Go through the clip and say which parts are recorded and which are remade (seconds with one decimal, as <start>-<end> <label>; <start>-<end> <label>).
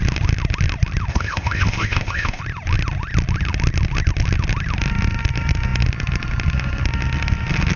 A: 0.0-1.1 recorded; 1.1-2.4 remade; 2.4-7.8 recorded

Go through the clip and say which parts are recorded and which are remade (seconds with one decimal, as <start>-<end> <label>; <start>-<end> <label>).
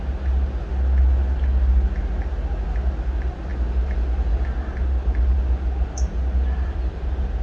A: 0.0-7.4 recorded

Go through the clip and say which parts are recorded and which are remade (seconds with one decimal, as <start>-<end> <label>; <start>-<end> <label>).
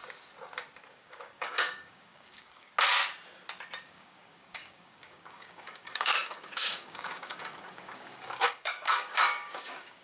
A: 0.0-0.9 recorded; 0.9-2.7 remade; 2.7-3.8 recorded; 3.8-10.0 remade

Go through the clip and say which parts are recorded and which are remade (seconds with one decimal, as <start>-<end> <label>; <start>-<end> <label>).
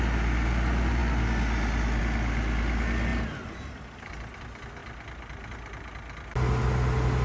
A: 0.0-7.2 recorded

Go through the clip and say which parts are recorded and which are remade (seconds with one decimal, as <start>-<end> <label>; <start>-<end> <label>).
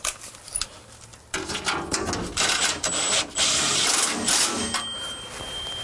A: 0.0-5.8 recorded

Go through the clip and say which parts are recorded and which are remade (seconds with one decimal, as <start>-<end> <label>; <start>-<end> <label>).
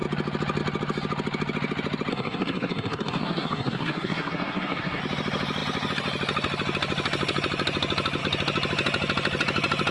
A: 0.0-2.1 recorded; 2.1-5.0 remade; 5.0-9.9 recorded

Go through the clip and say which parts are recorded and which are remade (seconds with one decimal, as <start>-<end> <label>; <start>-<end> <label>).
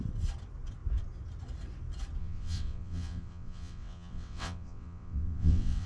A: 0.0-2.2 recorded; 2.2-5.9 remade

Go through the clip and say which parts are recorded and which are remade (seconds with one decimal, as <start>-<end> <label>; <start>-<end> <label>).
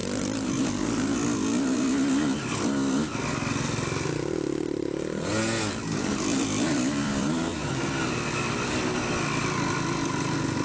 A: 0.0-6.1 recorded; 6.1-7.8 remade; 7.8-10.6 recorded